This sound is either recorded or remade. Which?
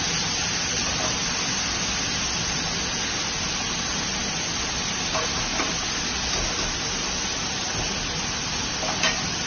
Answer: recorded